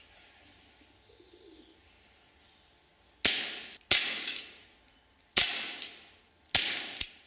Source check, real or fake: real